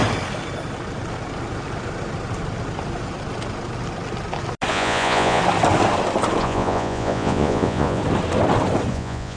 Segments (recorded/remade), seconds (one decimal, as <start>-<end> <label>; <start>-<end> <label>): 0.0-4.7 recorded; 4.7-5.4 remade; 5.4-6.4 recorded; 6.4-8.0 remade; 8.0-8.9 recorded; 8.9-9.4 remade